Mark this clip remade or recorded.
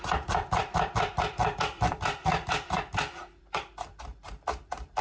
remade